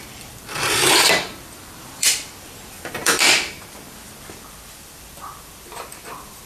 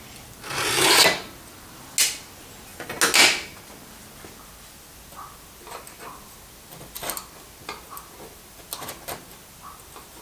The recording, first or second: second